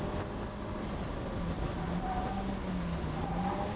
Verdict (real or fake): real